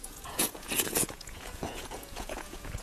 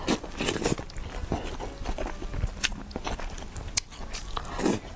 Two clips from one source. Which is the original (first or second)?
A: second